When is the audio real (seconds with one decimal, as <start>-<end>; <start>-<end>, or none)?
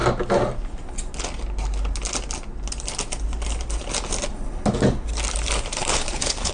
0.0-5.8